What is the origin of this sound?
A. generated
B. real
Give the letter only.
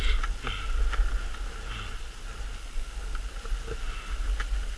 B